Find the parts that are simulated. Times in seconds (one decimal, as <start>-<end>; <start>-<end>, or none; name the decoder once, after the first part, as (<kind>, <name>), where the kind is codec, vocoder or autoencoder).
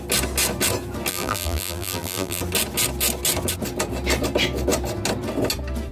1.1-2.4 (vocoder, BigVGAN v2)